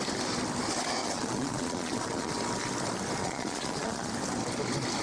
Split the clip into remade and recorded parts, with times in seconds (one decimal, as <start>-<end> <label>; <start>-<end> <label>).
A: 0.0-1.0 recorded; 1.0-2.3 remade; 2.3-3.2 recorded; 3.2-4.1 remade; 4.1-5.0 recorded